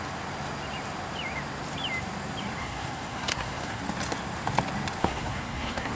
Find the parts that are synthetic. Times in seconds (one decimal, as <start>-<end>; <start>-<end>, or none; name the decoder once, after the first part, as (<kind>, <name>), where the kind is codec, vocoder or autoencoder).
2.6-3.8 (codec, SNAC); 5.0-5.9